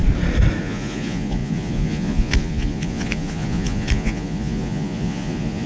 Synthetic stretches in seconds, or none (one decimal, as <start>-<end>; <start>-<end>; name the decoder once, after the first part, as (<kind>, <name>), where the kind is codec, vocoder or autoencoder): 0.6-5.7 (vocoder, Vocos)